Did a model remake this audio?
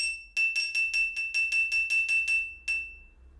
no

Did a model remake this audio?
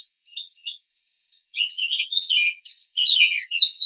yes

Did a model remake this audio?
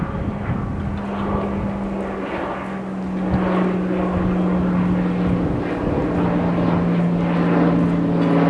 no